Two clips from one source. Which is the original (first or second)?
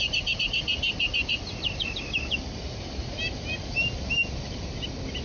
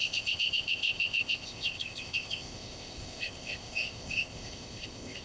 first